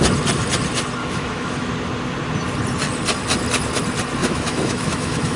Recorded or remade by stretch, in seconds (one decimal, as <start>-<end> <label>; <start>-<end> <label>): 0.0-1.0 recorded; 1.0-1.7 remade; 1.7-4.2 recorded; 4.2-5.4 remade